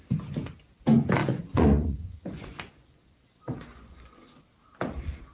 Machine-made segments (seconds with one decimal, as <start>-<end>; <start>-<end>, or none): 1.2-4.4